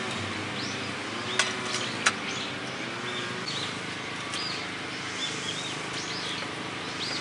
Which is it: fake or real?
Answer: real